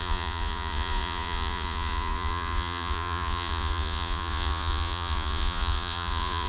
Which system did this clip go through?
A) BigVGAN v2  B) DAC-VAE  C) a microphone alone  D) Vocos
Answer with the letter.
D